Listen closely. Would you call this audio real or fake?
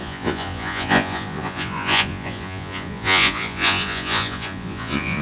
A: fake